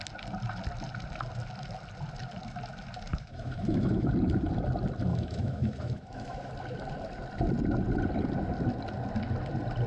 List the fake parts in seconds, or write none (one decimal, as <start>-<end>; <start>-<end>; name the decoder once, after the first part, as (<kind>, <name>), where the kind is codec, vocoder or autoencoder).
3.1-4.1 (autoencoder, DAC-VAE); 5.1-6.5